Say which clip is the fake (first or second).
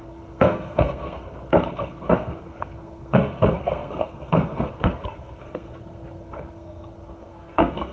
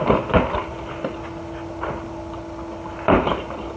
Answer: first